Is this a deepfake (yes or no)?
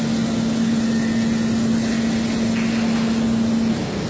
no